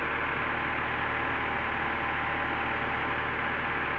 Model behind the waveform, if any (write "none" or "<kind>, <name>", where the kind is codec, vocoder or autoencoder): none